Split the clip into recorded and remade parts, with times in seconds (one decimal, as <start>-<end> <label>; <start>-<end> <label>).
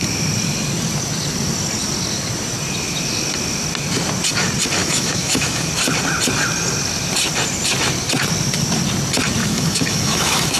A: 0.0-4.8 recorded; 4.8-5.7 remade; 5.7-9.4 recorded; 9.4-10.6 remade